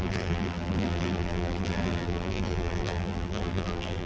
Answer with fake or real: fake